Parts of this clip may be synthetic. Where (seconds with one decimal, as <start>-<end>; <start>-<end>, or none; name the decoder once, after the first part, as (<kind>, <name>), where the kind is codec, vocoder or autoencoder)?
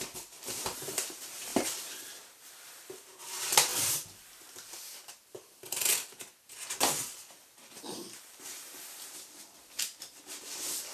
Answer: 0.0-3.7 (vocoder, BigVGAN v2); 7.7-10.9